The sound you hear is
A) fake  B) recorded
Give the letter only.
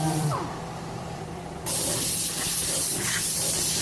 A